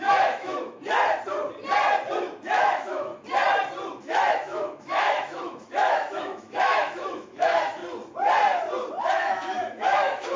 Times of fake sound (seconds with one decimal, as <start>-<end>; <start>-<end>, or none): 0.0-0.8; 2.4-3.1; 4.0-7.8; 9.0-10.4